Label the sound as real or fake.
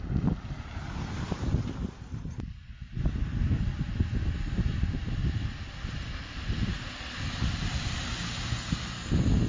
real